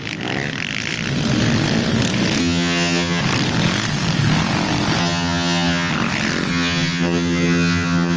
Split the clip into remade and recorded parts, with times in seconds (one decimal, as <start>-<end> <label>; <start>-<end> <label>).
0.0-2.4 recorded; 2.4-3.2 remade; 3.2-5.0 recorded; 5.0-5.9 remade; 5.9-6.5 recorded; 6.5-8.2 remade